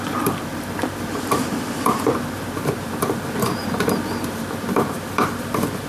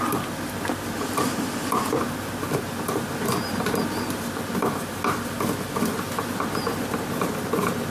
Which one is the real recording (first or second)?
second